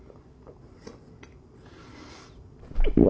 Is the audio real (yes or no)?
yes